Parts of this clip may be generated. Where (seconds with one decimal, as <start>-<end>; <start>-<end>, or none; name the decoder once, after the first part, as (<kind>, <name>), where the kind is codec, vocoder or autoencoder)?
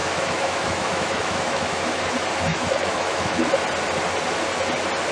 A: 0.0-2.1 (autoencoder, DAC-VAE); 2.5-3.5